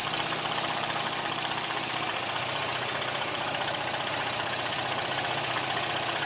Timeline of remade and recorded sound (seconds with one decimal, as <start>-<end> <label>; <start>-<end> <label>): 0.0-2.1 recorded; 2.1-6.3 remade

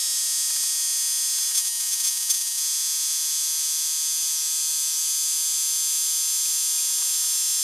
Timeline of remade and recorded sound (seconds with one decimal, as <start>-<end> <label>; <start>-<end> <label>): 0.0-1.5 recorded; 1.5-2.6 remade; 2.6-7.6 recorded

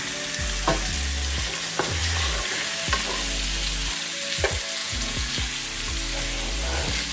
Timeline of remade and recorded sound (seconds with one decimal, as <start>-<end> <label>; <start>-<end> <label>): 0.0-4.8 recorded; 4.8-5.3 remade; 5.3-7.1 recorded

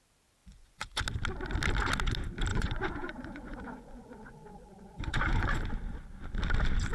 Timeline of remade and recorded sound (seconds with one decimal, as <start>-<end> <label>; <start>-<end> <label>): 0.0-0.4 recorded; 0.4-1.0 remade; 1.0-2.5 recorded; 2.5-5.6 remade; 5.6-6.9 recorded

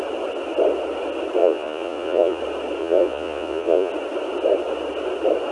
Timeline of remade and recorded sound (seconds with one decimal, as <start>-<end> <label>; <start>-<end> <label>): 0.0-1.4 recorded; 1.4-2.4 remade; 2.4-2.8 recorded; 2.8-3.9 remade; 3.9-5.5 recorded

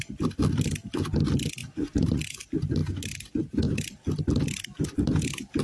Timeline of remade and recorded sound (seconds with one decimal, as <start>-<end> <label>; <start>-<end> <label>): 0.0-1.6 recorded; 1.6-2.2 remade; 2.2-5.6 recorded

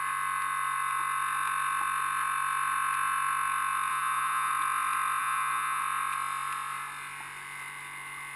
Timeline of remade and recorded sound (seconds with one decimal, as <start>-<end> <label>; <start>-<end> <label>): 0.0-3.9 recorded; 3.9-4.5 remade; 4.5-5.2 recorded; 5.2-5.8 remade; 5.8-8.4 recorded

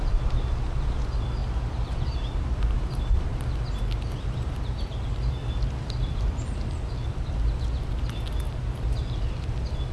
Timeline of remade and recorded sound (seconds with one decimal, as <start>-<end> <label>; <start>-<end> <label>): 0.0-9.9 recorded